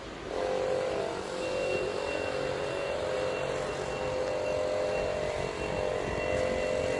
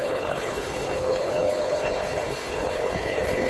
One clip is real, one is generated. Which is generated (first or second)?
second